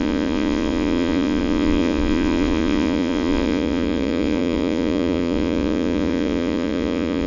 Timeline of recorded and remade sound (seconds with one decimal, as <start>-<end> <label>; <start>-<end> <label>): 0.0-7.3 remade